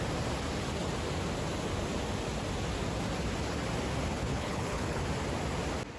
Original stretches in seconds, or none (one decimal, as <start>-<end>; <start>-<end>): 0.0-4.2; 5.0-6.0